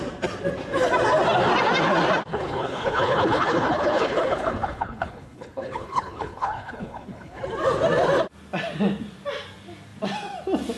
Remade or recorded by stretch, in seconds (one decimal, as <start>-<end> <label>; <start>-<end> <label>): 0.0-2.3 recorded; 2.3-7.4 remade; 7.4-10.8 recorded